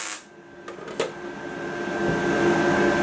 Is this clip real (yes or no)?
yes